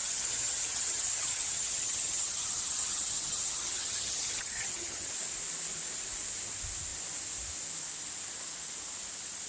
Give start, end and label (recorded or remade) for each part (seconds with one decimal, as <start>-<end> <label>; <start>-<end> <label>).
0.0-5.1 remade; 5.1-9.5 recorded